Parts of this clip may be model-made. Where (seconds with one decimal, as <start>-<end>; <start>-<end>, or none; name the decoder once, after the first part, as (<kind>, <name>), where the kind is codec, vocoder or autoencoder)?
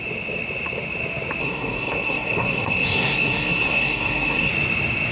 1.4-4.5 (codec, SNAC)